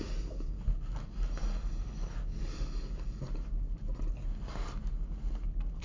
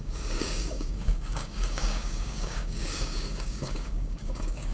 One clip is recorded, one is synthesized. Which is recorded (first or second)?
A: first